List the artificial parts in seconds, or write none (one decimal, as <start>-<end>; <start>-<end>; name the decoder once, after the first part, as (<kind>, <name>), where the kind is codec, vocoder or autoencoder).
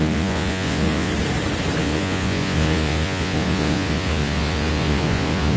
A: 0.0-1.1 (vocoder, Vocos); 1.8-5.6